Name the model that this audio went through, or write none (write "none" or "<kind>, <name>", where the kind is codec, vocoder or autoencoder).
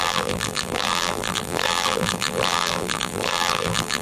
vocoder, BigVGAN v2